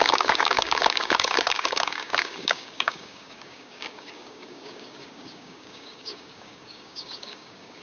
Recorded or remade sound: remade